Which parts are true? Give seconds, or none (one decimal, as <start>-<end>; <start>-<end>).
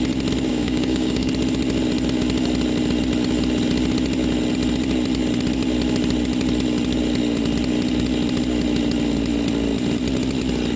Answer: 0.0-0.5; 1.3-10.8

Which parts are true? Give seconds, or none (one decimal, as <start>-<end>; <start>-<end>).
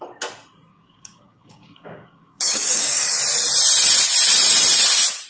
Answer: 0.0-0.7; 3.2-5.3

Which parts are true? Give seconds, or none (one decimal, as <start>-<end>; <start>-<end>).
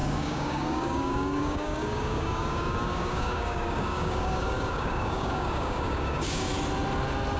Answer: 6.5-7.4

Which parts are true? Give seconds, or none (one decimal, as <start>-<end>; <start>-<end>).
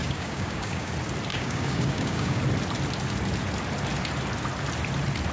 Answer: 0.9-1.3; 2.4-5.3